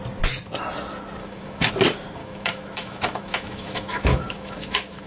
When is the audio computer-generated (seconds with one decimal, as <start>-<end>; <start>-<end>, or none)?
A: 1.2-1.7; 2.2-5.1